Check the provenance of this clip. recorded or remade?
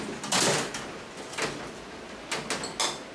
recorded